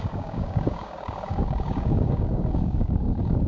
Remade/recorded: remade